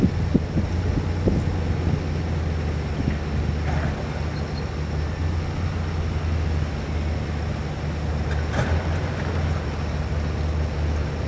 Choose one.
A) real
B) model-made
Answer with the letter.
A